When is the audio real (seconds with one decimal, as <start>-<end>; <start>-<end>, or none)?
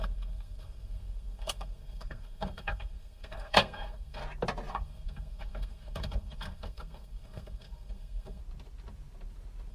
4.2-4.7; 8.4-9.7